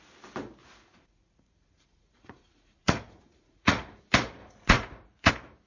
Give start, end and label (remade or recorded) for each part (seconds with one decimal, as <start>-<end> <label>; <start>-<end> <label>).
0.0-0.6 recorded; 0.6-4.0 remade; 4.0-4.4 recorded; 4.4-5.3 remade; 5.3-5.7 recorded